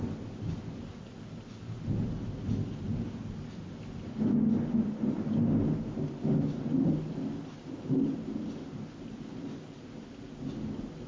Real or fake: real